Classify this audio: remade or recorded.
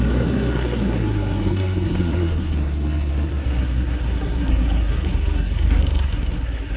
remade